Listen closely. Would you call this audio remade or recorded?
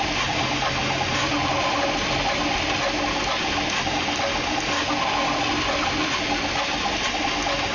recorded